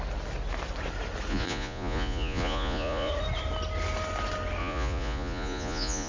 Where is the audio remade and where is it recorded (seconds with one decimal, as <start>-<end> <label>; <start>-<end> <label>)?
0.0-1.3 recorded; 1.3-3.1 remade; 3.1-4.6 recorded; 4.6-6.1 remade